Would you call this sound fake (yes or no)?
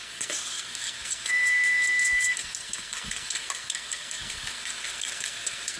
yes